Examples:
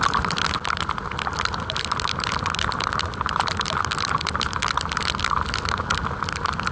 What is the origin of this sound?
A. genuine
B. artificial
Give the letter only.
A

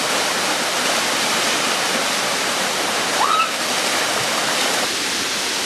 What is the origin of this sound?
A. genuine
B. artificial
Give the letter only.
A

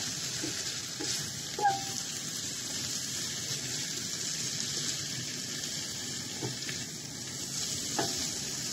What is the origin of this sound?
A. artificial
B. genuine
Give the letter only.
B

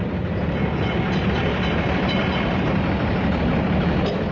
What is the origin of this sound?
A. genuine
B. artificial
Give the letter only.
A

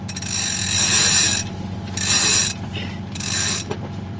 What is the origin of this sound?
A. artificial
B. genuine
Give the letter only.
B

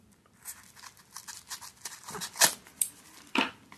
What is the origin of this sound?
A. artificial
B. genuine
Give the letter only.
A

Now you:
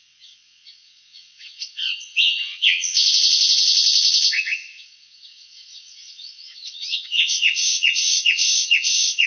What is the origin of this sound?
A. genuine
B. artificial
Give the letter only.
B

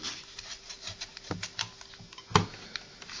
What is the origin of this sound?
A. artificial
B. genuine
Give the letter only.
B